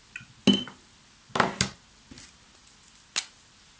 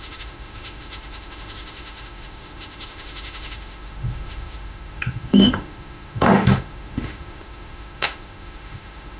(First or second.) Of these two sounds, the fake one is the second